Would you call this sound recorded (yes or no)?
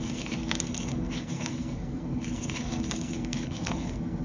no